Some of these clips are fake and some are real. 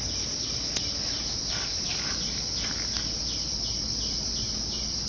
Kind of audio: real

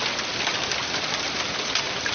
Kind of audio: real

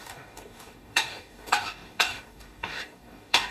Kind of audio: fake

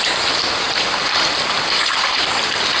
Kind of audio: fake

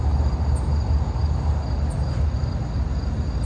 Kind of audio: real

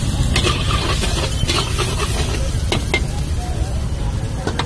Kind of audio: real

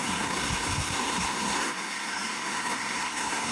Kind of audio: fake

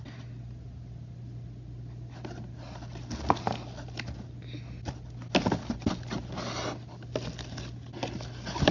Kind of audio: real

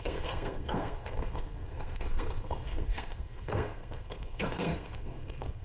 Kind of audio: fake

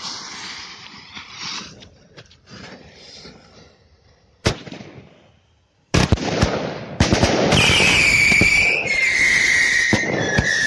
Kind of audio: fake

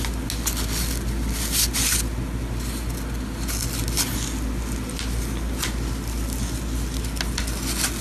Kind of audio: real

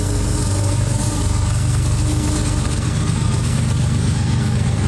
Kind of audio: fake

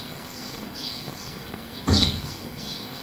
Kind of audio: fake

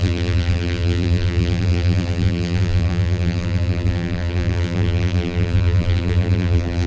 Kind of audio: fake